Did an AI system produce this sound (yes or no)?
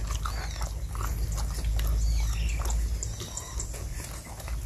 no